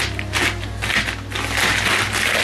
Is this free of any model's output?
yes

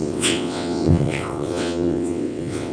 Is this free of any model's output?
no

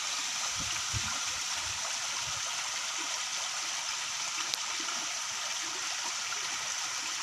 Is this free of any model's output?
no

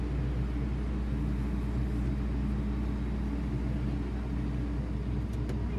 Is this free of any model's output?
yes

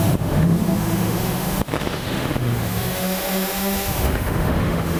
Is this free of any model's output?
no